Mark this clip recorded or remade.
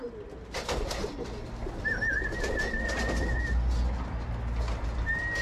recorded